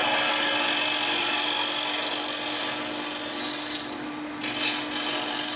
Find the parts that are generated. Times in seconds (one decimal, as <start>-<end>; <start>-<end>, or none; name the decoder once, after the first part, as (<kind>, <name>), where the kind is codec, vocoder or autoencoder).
none